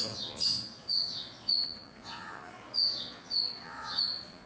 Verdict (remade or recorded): remade